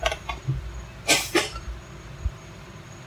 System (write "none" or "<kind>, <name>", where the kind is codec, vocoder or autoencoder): vocoder, BigVGAN v2